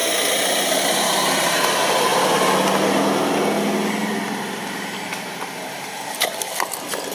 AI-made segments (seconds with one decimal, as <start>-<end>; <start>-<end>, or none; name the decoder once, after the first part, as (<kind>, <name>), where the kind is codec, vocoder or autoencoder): none